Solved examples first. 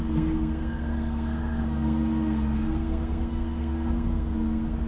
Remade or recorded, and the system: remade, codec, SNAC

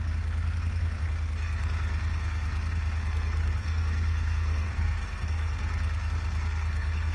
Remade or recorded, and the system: remade, codec, SNAC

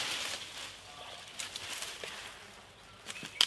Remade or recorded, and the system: recorded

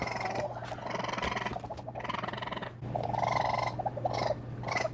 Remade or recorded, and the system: recorded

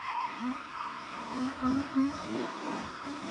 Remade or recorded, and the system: remade, codec, SNAC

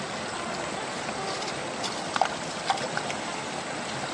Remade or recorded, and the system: recorded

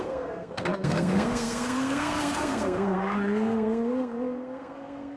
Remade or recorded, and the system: remade, codec, SNAC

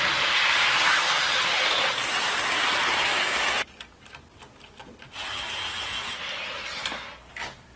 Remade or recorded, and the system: recorded